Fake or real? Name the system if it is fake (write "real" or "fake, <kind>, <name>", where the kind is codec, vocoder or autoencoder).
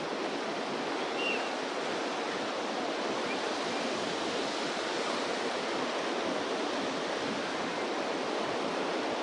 real